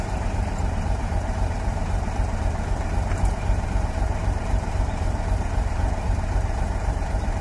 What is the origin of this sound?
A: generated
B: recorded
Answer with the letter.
A